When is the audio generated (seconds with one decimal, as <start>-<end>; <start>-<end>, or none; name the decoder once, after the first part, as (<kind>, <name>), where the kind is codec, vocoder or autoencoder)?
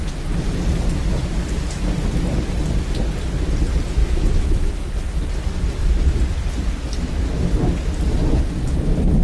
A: 4.0-4.9 (autoencoder, DAC-VAE)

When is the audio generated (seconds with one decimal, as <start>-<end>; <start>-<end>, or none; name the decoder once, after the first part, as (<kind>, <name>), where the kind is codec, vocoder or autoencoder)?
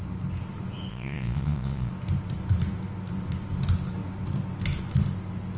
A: 0.9-1.9 (vocoder, Vocos)